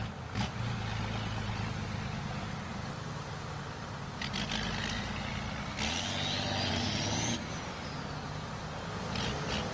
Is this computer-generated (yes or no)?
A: no